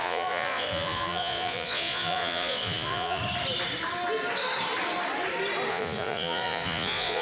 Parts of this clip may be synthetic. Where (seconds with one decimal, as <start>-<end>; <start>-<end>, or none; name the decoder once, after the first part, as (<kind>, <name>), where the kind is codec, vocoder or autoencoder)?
0.0-3.2 (vocoder, Vocos); 5.7-7.2